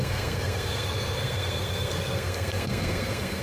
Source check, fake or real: fake